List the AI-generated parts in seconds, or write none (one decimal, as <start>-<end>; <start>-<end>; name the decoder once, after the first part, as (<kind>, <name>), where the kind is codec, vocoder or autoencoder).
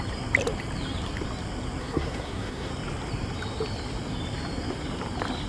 1.8-2.7 (codec, SNAC)